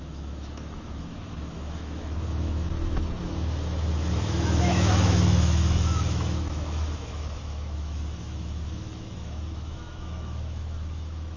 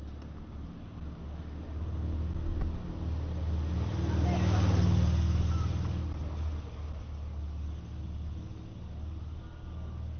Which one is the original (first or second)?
second